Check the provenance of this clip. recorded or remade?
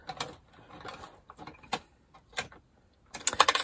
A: recorded